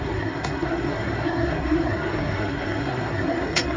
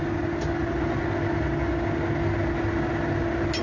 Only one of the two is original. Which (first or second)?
second